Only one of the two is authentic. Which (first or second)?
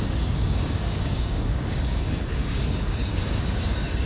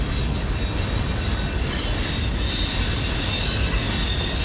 second